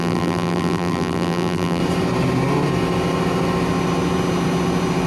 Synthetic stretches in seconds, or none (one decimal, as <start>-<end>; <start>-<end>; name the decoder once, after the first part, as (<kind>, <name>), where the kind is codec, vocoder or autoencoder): 0.0-1.8 (vocoder, BigVGAN v2)